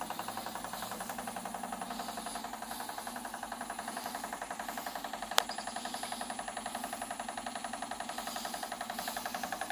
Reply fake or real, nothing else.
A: real